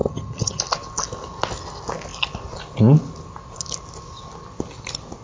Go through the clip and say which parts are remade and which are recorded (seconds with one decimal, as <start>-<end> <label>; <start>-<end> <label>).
0.0-0.6 remade; 0.6-5.2 recorded